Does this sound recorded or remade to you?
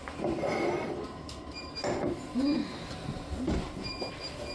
recorded